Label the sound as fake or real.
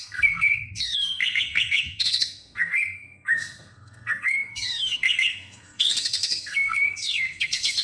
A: fake